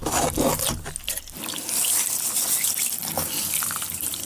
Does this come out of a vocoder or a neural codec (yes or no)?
no